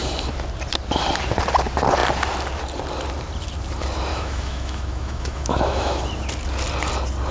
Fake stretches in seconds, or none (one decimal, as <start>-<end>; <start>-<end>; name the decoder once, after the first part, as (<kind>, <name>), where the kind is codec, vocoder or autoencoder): 4.1-6.1 (autoencoder, DAC-VAE)